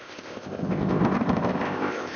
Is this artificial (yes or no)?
yes